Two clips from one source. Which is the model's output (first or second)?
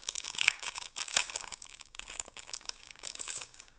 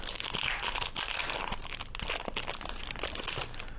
first